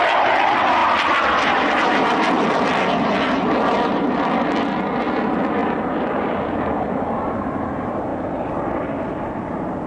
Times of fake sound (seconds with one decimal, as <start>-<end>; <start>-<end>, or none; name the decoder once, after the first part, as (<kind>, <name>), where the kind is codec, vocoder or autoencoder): 0.8-4.5 (vocoder, BigVGAN v2); 5.6-7.0; 8.1-9.9